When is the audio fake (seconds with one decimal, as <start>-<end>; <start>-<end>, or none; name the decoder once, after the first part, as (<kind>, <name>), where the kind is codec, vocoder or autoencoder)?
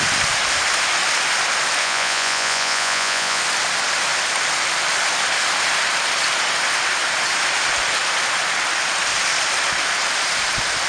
1.8-3.4 (vocoder, Vocos)